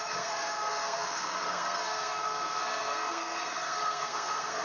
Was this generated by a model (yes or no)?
yes